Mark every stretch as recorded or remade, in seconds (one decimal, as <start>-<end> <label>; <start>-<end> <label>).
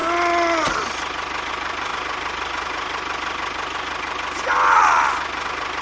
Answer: 0.0-1.5 recorded; 1.5-1.9 remade; 1.9-5.8 recorded